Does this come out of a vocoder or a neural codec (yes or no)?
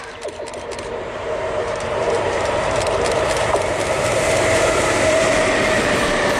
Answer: yes